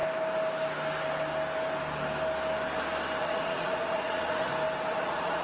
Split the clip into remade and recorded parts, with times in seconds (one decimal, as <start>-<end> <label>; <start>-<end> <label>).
0.0-3.2 recorded; 3.2-4.5 remade; 4.5-5.0 recorded; 5.0-5.4 remade

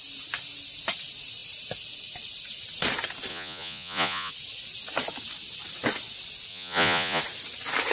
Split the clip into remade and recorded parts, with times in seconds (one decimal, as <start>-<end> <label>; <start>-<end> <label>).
0.0-3.3 recorded; 3.3-4.3 remade; 4.3-6.5 recorded; 6.5-7.2 remade; 7.2-7.9 recorded

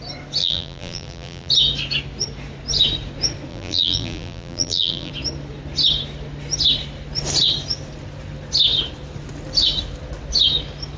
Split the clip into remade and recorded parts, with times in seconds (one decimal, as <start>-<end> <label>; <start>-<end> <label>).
0.0-0.4 recorded; 0.4-1.5 remade; 1.5-3.5 recorded; 3.5-5.1 remade; 5.1-11.0 recorded

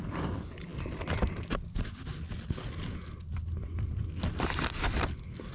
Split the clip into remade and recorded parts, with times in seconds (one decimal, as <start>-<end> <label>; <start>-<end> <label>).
0.0-5.5 recorded

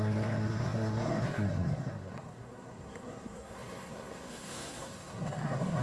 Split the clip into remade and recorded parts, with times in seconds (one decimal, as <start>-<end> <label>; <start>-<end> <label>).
0.0-5.8 remade

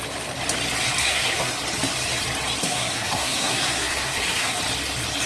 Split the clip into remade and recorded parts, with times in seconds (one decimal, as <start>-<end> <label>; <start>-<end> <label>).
0.0-1.0 recorded; 1.0-1.5 remade; 1.5-2.6 recorded; 2.6-4.6 remade; 4.6-5.3 recorded

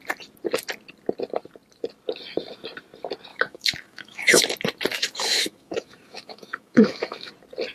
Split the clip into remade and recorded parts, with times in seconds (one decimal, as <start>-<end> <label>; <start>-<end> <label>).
0.0-3.3 recorded; 3.3-4.4 remade; 4.4-4.9 recorded; 4.9-7.3 remade; 7.3-7.7 recorded

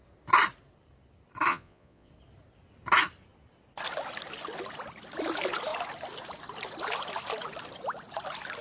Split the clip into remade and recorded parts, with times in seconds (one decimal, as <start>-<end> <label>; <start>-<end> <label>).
0.0-1.5 recorded; 1.5-2.1 remade; 2.1-8.6 recorded